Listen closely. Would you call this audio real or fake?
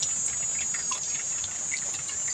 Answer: real